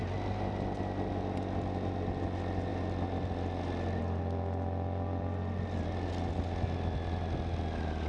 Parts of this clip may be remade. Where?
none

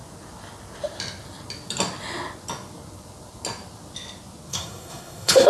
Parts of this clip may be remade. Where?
4.5-5.5 (codec, SNAC)

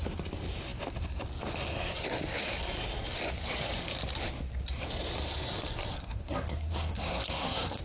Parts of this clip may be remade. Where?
5.9-7.8 (codec, SNAC)

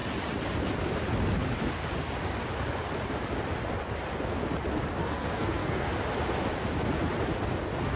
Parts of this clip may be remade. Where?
5.0-5.9 (codec, SNAC)

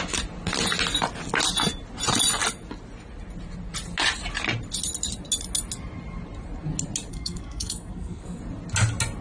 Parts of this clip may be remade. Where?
7.1-8.4 (codec, SNAC)

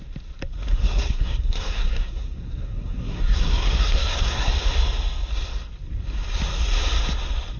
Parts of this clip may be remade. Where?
0.7-4.5 (codec, SNAC)

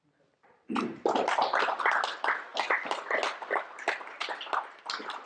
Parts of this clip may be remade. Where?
none

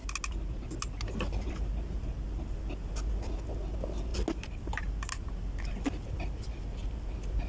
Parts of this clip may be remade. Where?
none